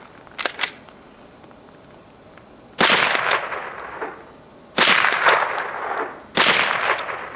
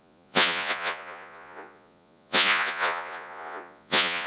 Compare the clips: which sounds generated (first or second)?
second